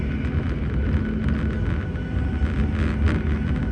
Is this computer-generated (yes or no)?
no